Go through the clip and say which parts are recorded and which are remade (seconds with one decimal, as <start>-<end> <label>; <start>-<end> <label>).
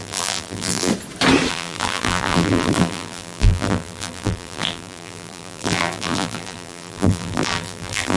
0.0-0.9 remade; 0.9-1.5 recorded; 1.5-8.2 remade